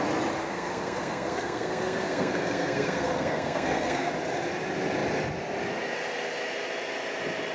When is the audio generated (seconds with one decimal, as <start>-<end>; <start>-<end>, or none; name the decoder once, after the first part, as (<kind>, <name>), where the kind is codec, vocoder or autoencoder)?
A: 0.4-4.1 (codec, SNAC)